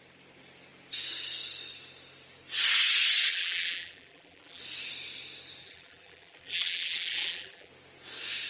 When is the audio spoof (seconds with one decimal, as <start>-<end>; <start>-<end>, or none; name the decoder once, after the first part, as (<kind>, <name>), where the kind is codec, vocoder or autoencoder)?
3.3-4.6 (vocoder, BigVGAN v2); 5.6-7.7